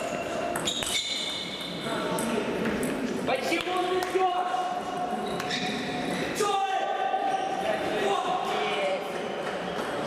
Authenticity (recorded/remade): remade